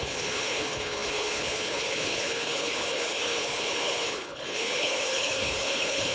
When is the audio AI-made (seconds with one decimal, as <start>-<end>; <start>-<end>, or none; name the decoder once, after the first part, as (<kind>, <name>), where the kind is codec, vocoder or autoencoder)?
0.0-6.1 (codec, HILCodec)